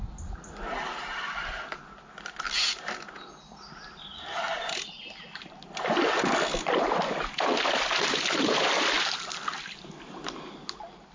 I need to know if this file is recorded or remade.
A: recorded